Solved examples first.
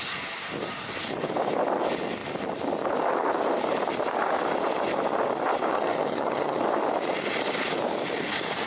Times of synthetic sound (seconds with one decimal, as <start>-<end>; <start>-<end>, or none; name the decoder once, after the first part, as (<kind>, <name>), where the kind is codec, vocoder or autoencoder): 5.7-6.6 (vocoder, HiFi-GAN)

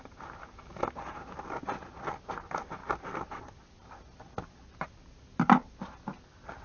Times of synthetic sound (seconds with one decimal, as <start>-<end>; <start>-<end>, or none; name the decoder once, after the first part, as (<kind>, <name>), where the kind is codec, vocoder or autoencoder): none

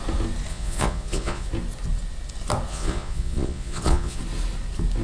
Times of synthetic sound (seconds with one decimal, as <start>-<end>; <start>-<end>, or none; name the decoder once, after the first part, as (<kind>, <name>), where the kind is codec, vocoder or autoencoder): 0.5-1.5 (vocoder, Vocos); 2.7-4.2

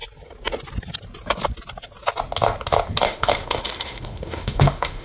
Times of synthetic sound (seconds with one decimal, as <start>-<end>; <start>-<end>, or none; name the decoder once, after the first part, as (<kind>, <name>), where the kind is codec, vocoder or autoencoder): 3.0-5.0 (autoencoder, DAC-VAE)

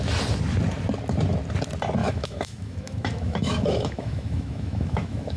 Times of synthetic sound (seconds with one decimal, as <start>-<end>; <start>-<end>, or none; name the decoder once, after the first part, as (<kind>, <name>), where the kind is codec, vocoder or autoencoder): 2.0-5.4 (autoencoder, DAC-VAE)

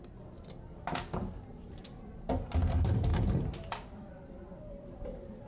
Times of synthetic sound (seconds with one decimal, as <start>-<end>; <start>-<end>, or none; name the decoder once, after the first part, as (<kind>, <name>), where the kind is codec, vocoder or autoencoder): 1.5-2.3 (vocoder, BigVGAN v2); 3.1-4.1